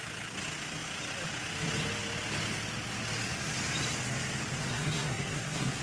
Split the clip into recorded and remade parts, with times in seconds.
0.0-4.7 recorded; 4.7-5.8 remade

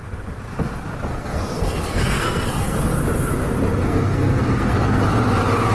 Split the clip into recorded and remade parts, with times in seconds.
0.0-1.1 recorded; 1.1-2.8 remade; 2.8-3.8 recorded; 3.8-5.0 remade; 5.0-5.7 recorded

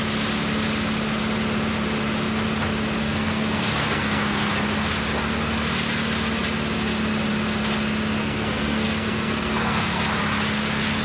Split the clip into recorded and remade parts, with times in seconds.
0.0-3.0 recorded; 3.0-4.5 remade; 4.5-8.2 recorded; 8.2-10.0 remade; 10.0-11.0 recorded

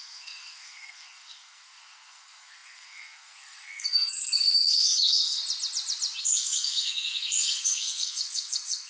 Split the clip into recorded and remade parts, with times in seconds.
0.0-5.4 remade; 5.4-6.2 recorded; 6.2-8.9 remade

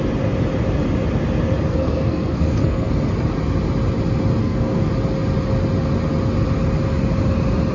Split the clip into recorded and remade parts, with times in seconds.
0.0-1.7 recorded; 1.7-2.9 remade; 2.9-4.4 recorded; 4.4-4.9 remade; 4.9-7.7 recorded

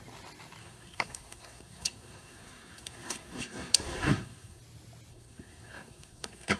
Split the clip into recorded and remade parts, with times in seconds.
0.0-0.6 recorded; 0.6-4.6 remade; 4.6-5.1 recorded; 5.1-6.6 remade

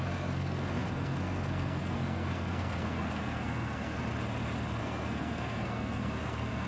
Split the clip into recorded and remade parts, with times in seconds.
0.0-4.1 remade; 4.1-4.8 recorded; 4.8-6.7 remade